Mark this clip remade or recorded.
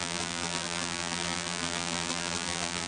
remade